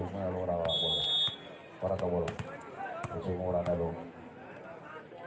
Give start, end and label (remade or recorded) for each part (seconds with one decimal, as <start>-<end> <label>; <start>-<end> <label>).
0.0-5.3 recorded